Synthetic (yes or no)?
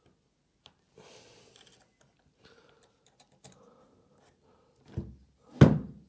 no